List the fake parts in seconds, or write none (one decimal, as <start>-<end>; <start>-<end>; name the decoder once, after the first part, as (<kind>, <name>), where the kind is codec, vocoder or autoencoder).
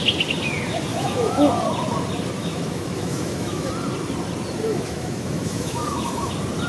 0.9-1.5 (autoencoder, DAC-VAE); 2.4-3.7; 4.6-6.3